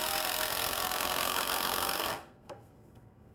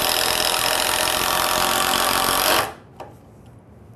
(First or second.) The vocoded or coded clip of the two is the first